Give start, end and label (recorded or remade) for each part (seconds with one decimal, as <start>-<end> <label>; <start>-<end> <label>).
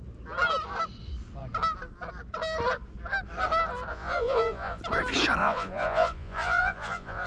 0.0-3.9 recorded; 3.9-4.8 remade; 4.8-5.4 recorded; 5.4-7.3 remade